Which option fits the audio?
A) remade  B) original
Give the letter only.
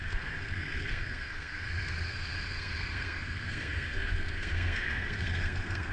A